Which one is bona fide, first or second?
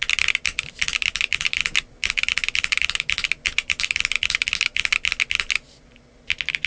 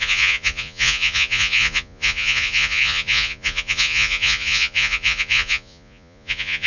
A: first